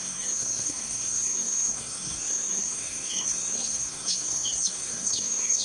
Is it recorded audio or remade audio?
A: remade